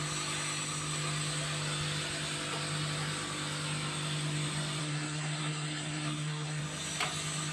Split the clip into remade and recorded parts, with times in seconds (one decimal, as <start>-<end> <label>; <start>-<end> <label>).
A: 0.0-4.8 recorded; 4.8-6.6 remade; 6.6-7.5 recorded